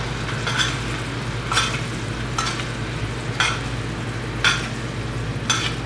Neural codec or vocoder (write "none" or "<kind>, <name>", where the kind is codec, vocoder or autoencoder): none